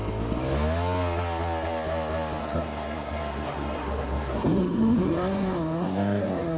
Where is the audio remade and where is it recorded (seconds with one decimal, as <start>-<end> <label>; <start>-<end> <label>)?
0.0-2.4 recorded; 2.4-6.6 remade